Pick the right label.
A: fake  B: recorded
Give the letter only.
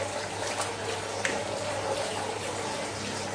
B